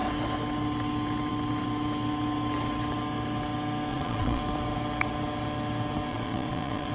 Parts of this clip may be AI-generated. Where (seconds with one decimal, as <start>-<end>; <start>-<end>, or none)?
3.9-4.4; 6.1-6.9